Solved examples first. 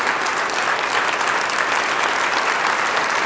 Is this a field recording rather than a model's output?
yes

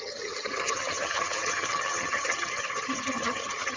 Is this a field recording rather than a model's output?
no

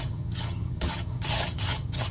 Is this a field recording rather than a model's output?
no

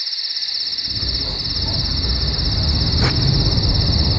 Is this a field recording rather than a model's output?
yes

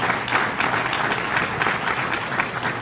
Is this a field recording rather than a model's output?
yes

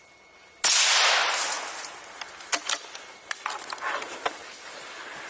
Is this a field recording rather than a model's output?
yes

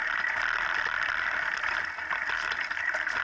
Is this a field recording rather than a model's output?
yes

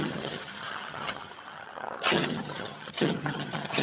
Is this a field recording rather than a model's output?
no